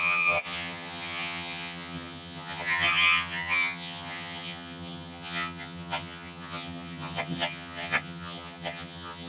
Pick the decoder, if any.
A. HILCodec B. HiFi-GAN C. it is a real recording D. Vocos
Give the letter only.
B